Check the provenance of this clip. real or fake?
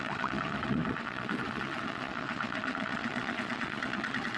fake